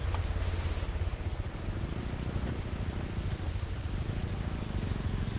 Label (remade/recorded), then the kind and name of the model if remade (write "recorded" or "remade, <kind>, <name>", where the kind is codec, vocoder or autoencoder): recorded